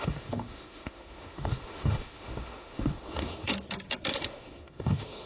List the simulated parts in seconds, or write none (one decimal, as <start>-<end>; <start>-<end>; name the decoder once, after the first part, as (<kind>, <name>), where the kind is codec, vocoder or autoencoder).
0.0-3.5 (autoencoder, DAC-VAE); 4.1-5.3